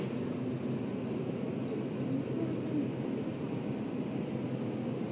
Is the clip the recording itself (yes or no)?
yes